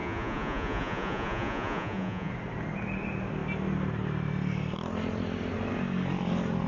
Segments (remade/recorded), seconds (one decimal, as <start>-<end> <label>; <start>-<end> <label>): 0.0-2.3 remade; 2.3-6.7 recorded